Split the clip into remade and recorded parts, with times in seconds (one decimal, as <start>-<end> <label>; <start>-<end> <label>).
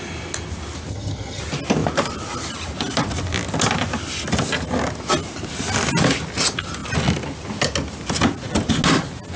0.0-0.9 recorded; 0.9-1.4 remade; 1.4-9.4 recorded